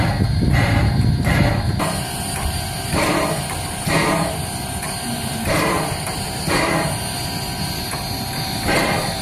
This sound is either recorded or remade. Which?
remade